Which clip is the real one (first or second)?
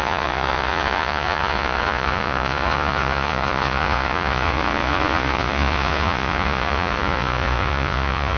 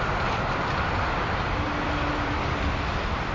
second